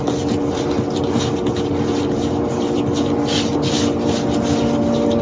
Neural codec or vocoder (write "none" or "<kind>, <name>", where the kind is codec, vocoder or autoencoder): none